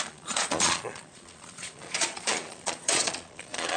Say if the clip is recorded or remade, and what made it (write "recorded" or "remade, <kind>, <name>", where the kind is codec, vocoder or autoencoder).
remade, vocoder, Vocos